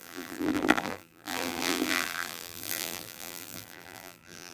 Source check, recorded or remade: remade